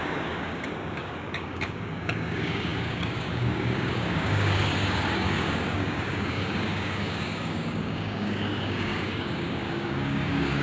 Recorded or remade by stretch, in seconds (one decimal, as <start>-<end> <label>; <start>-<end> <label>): 0.0-10.6 remade